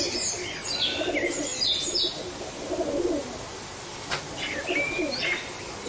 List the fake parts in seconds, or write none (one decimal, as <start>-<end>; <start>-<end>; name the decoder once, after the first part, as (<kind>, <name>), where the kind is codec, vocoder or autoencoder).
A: none